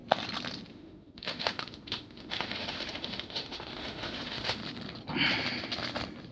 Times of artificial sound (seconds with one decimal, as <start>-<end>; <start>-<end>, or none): 0.7-4.6